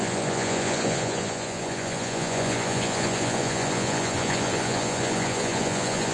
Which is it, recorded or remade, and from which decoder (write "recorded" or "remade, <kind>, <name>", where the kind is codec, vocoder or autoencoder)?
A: remade, vocoder, Vocos